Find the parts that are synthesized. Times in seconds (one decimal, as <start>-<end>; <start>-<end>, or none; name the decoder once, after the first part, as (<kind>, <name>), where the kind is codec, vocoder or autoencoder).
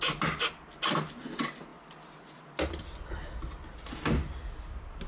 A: none